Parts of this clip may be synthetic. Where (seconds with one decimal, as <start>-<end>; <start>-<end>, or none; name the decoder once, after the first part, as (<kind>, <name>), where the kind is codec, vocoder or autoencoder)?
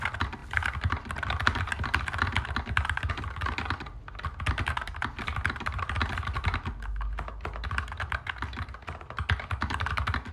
none